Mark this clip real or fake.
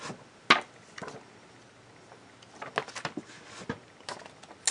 real